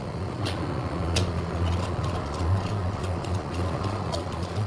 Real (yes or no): no